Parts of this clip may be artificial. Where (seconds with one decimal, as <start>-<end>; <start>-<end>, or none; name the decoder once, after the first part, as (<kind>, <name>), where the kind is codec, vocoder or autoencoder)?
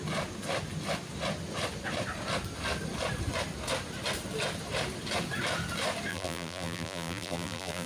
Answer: 6.1-7.9 (vocoder, BigVGAN v2)